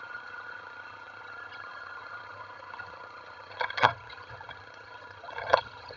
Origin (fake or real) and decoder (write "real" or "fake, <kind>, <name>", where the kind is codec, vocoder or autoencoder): fake, vocoder, HiFi-GAN